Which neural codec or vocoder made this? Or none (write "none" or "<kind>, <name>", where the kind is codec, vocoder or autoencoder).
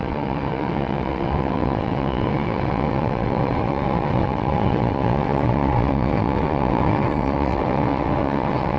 vocoder, WaveNeXt